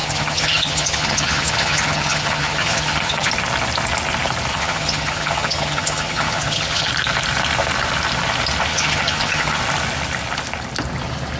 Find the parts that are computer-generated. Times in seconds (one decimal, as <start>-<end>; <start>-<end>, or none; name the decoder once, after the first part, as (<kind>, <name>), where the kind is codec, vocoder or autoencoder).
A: 0.0-3.3 (vocoder, HiFi-GAN); 4.5-6.9; 8.7-9.6